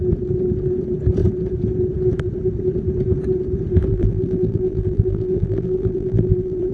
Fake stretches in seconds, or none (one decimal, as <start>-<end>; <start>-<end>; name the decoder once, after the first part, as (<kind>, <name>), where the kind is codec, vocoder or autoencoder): 3.9-6.7 (vocoder, BigVGAN v2)